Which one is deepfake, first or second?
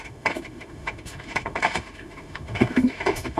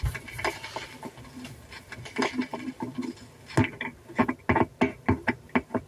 first